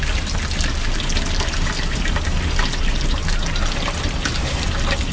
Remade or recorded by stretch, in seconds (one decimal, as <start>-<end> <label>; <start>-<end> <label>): 0.0-4.3 recorded; 4.3-5.1 remade